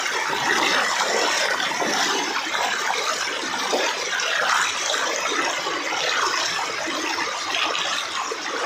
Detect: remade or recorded recorded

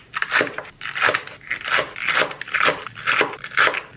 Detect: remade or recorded recorded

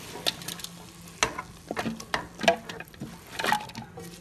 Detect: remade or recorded recorded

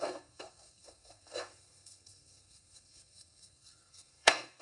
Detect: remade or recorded remade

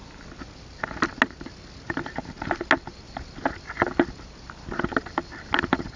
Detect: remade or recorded recorded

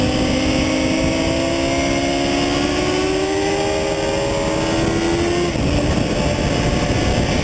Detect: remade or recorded recorded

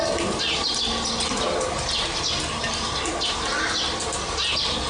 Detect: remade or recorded recorded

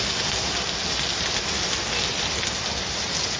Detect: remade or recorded recorded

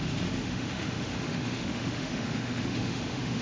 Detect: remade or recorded remade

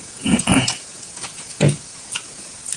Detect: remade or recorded remade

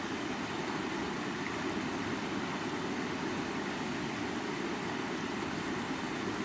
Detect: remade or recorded remade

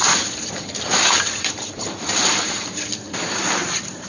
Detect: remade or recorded remade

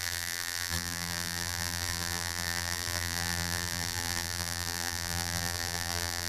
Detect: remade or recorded remade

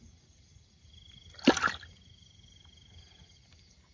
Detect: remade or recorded recorded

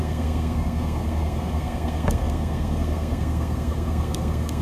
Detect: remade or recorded remade